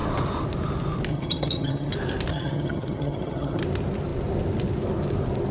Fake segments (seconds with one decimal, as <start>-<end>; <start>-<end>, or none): 1.1-1.9; 2.3-3.6